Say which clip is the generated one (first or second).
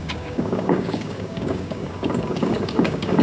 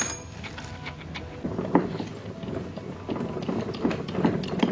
first